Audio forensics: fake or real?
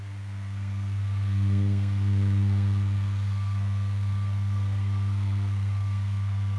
fake